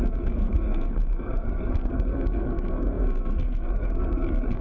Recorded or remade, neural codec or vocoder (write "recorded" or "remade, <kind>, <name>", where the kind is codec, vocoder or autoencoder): remade, codec, SNAC